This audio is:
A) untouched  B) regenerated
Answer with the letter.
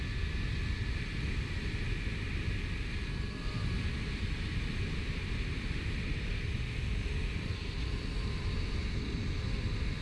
A